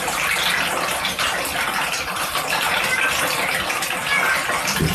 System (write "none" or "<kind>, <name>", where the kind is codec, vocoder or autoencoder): none